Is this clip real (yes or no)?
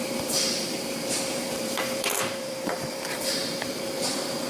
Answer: no